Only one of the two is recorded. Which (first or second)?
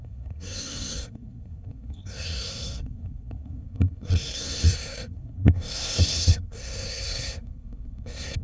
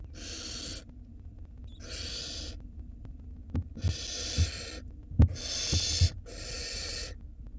second